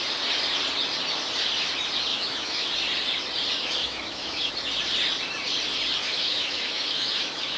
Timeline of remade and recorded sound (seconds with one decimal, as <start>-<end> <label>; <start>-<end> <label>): 0.0-2.1 recorded; 2.1-2.7 remade; 2.7-3.8 recorded; 3.8-4.5 remade; 4.5-6.0 recorded; 6.0-7.6 remade